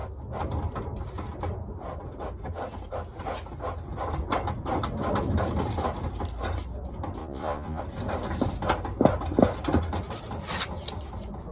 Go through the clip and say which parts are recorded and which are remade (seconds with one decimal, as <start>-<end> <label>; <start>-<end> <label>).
0.0-7.2 recorded; 7.2-7.8 remade; 7.8-11.5 recorded